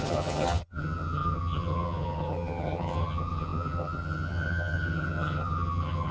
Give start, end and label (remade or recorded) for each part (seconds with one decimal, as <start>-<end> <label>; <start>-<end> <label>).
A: 0.0-6.1 remade